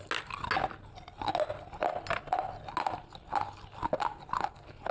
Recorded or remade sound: recorded